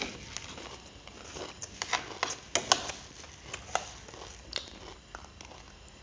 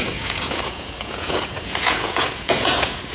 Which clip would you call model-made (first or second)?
second